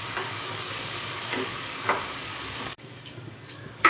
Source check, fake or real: fake